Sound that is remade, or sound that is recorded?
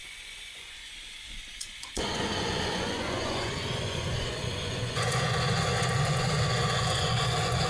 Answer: remade